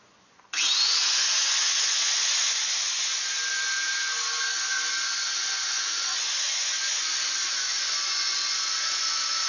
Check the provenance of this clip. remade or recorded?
remade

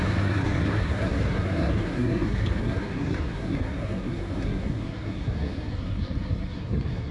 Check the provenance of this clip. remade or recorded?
remade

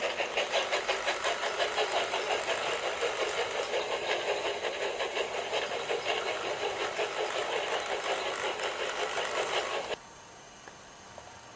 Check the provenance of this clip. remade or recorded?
recorded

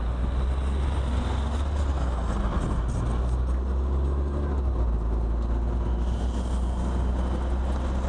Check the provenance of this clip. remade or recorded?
recorded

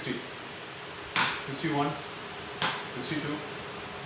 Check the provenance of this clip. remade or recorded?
recorded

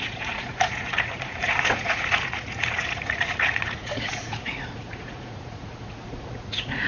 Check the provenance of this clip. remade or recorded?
remade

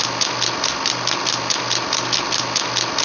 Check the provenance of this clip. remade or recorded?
recorded